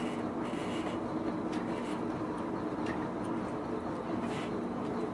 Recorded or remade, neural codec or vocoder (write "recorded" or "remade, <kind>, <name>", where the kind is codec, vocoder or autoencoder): recorded